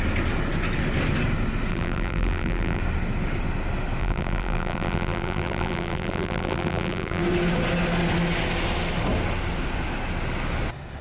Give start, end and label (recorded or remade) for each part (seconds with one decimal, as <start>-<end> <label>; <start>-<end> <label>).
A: 0.0-1.7 recorded; 1.7-2.8 remade; 2.8-4.0 recorded; 4.0-7.2 remade; 7.2-11.0 recorded